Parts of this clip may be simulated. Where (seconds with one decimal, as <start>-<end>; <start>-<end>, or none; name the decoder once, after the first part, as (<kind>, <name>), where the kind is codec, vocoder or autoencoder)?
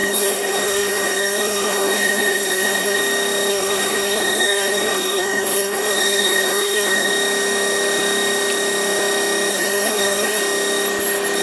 0.0-3.0 (codec, SNAC); 3.5-7.1; 9.5-10.4